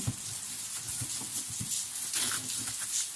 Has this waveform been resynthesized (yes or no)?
no